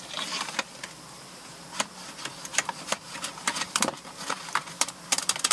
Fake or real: fake